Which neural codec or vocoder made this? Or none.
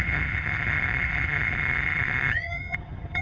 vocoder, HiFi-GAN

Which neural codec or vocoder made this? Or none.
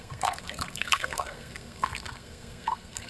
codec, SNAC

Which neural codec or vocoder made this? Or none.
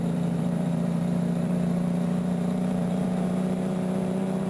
vocoder, BigVGAN v2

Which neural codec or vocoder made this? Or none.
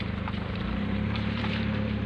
vocoder, BigVGAN v2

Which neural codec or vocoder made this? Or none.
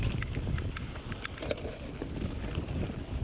none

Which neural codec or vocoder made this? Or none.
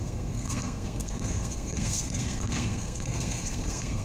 codec, SNAC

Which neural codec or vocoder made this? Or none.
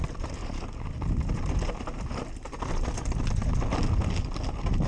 none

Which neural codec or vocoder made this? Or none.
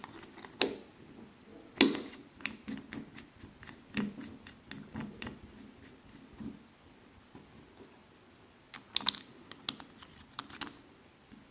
none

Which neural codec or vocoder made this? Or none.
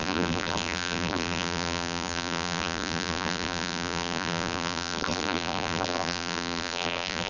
vocoder, BigVGAN v2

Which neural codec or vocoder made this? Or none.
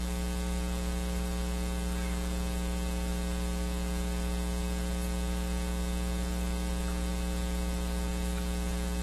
none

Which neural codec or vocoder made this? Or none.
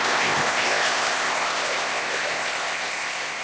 codec, ZipCodec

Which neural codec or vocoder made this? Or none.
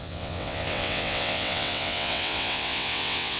vocoder, WaveNeXt